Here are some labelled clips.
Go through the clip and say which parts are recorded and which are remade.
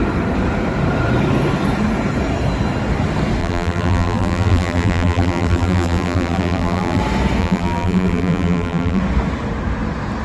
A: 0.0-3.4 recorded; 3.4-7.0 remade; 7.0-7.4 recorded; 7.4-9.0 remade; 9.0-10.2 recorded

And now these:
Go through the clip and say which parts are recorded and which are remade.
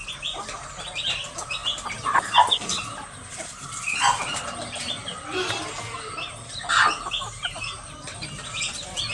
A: 0.0-9.1 recorded